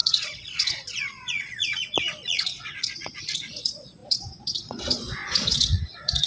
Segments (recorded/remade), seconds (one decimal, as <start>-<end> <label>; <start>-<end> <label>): 0.0-6.3 remade